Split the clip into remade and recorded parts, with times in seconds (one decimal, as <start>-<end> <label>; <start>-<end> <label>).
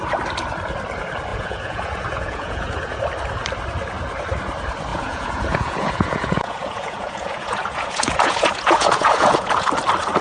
0.0-1.3 recorded; 1.3-3.0 remade; 3.0-4.9 recorded; 4.9-9.7 remade; 9.7-10.2 recorded